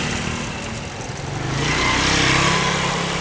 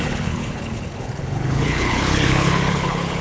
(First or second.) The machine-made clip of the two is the second